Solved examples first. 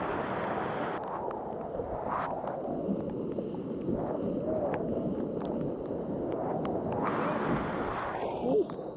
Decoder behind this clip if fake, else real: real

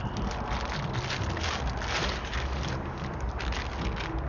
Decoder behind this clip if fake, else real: real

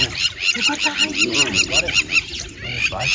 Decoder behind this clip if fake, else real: real